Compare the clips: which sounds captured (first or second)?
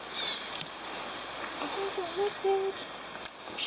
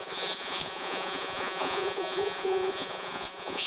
first